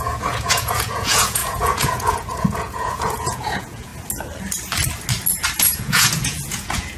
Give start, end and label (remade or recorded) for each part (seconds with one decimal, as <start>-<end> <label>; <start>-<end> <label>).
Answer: 0.0-3.9 remade; 3.9-5.6 recorded; 5.6-7.0 remade